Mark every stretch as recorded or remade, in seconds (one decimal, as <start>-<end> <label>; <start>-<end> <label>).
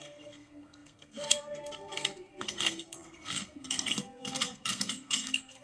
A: 0.0-5.6 remade